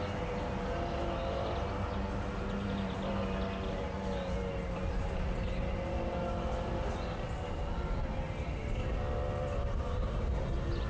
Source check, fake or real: real